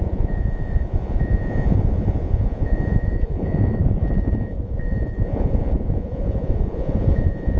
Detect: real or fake fake